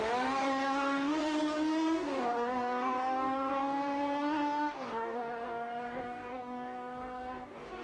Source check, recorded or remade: remade